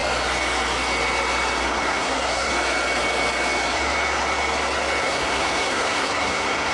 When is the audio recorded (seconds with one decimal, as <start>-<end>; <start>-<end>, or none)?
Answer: 0.0-1.6; 2.5-5.0